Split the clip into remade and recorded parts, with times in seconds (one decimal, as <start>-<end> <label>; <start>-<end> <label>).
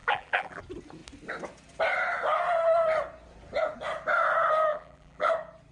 0.0-0.6 remade; 0.6-4.7 recorded; 4.7-5.3 remade; 5.3-5.7 recorded